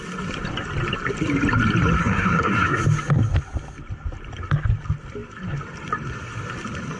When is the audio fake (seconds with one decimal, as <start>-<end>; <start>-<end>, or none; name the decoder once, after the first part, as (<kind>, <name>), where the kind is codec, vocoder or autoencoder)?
2.0-2.8 (codec, SNAC)